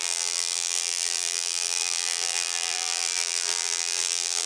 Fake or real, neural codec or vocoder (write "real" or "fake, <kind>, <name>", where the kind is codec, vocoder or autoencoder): fake, vocoder, BigVGAN v2